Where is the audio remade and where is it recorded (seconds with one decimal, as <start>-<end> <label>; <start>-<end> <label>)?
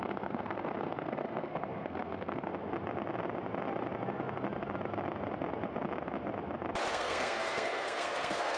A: 0.0-2.5 remade; 2.5-6.9 recorded; 6.9-8.6 remade